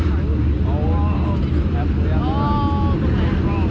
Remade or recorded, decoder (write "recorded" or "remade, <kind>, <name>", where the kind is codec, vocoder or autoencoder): recorded